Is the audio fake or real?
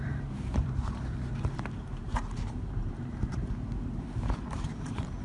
fake